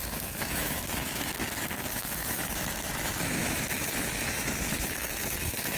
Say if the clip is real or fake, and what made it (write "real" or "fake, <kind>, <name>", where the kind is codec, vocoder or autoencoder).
fake, autoencoder, DAC-VAE